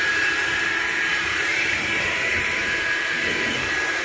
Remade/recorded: remade